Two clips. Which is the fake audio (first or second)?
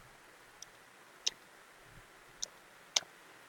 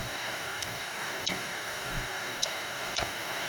second